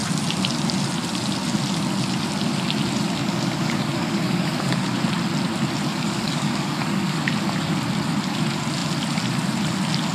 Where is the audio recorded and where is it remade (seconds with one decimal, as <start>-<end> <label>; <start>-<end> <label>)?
0.0-3.2 recorded; 3.2-5.0 remade; 5.0-5.9 recorded; 5.9-7.2 remade; 7.2-10.1 recorded